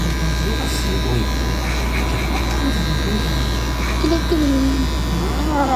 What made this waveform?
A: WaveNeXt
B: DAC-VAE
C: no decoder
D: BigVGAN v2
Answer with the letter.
C